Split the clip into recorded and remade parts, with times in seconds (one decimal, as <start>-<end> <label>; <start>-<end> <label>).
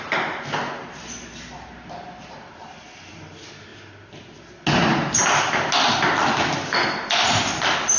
0.0-8.0 recorded